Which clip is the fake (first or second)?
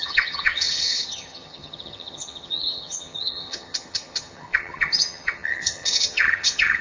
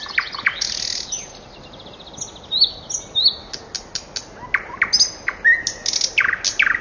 first